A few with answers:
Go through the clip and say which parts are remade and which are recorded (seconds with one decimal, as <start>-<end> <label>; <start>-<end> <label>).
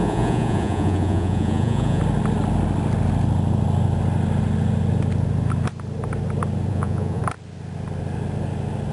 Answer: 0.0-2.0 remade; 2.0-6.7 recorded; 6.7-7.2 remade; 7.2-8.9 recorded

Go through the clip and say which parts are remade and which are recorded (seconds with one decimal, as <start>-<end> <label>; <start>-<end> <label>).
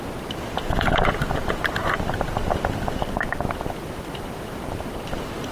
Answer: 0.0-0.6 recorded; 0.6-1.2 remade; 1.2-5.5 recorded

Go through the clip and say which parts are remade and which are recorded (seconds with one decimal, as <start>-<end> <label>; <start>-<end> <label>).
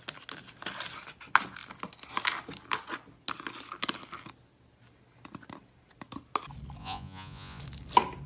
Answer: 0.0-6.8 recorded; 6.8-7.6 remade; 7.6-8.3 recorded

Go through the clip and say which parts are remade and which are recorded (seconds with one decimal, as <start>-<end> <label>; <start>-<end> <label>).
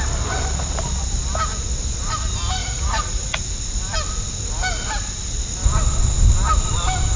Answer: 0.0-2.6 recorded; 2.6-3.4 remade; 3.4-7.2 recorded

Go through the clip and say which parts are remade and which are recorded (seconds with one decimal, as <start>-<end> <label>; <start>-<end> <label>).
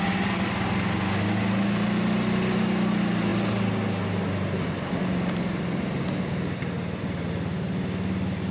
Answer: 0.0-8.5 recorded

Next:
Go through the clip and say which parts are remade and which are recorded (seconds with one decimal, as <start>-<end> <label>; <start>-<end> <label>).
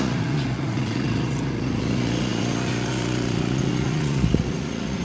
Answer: 0.0-5.0 remade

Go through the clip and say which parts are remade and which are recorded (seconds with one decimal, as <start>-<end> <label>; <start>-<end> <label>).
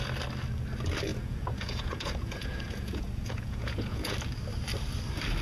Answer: 0.0-1.1 recorded; 1.1-4.1 remade; 4.1-5.4 recorded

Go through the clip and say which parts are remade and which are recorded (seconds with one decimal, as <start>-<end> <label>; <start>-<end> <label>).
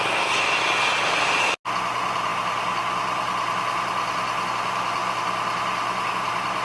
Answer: 0.0-6.6 recorded